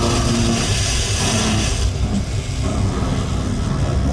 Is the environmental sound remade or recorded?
recorded